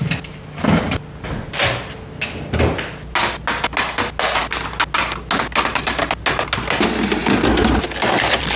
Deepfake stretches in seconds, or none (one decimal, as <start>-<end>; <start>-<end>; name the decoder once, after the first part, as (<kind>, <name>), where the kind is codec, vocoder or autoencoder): none